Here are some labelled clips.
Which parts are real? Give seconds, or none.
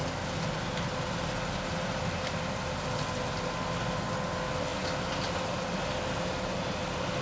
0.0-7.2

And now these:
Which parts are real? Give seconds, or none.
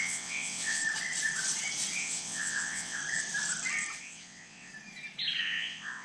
0.8-2.0; 3.0-4.0; 4.7-5.4